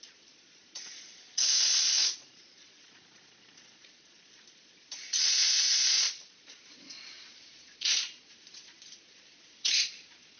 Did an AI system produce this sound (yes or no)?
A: yes